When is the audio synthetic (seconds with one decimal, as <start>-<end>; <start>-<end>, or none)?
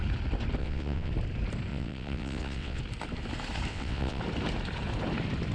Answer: 0.6-1.1; 1.7-2.8; 3.7-4.2